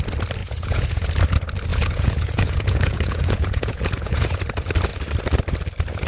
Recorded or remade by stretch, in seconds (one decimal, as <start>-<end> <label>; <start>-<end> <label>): 0.0-0.4 recorded; 0.4-1.1 remade; 1.1-1.7 recorded; 1.7-4.4 remade; 4.4-6.1 recorded